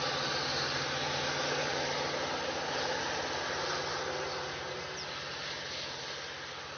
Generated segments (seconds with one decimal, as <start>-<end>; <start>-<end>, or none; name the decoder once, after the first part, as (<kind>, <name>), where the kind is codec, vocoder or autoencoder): none